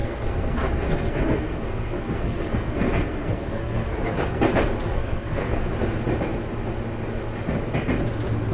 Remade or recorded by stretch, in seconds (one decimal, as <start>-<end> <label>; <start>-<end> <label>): 0.0-4.4 remade; 4.4-4.9 recorded; 4.9-5.7 remade; 5.7-8.5 recorded